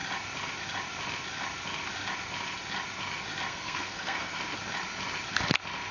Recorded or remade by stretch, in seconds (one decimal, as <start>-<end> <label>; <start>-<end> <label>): 0.0-3.5 recorded; 3.5-4.4 remade; 4.4-5.9 recorded